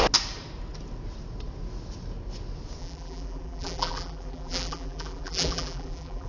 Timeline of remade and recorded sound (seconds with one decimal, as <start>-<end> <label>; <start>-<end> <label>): 0.0-2.8 recorded; 2.8-6.3 remade